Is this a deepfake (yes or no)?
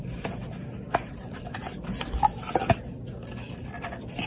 no